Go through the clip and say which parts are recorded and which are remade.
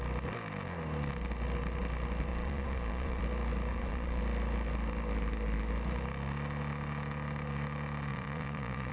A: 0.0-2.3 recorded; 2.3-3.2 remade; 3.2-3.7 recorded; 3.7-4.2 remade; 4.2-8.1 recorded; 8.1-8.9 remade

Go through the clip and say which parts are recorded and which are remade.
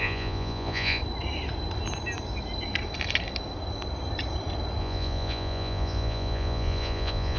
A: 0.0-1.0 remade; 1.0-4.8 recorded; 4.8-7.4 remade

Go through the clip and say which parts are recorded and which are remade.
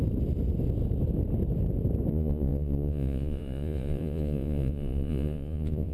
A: 0.0-2.1 recorded; 2.1-5.9 remade